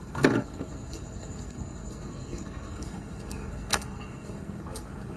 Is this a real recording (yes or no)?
no